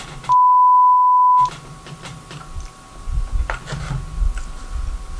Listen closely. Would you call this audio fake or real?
real